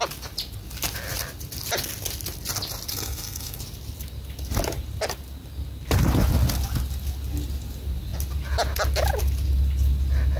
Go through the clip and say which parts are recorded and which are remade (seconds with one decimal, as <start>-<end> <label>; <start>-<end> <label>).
0.0-2.9 recorded; 2.9-3.6 remade; 3.6-10.4 recorded